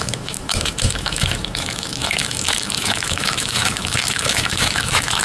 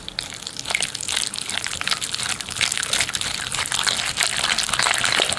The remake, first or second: first